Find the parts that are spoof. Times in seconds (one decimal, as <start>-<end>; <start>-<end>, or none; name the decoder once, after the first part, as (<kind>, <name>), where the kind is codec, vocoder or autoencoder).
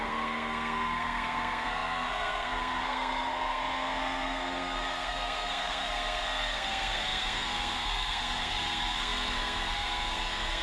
0.0-10.6 (codec, SNAC)